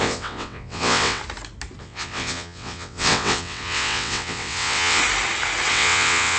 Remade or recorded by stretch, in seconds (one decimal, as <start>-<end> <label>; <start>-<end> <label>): 0.0-1.2 remade; 1.2-1.8 recorded; 1.8-5.0 remade; 5.0-5.7 recorded; 5.7-6.4 remade